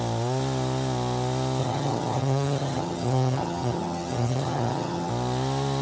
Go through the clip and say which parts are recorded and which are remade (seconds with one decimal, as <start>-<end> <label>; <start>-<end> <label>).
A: 0.0-1.6 recorded; 1.6-5.1 remade; 5.1-5.8 recorded